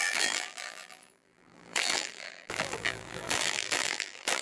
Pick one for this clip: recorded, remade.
remade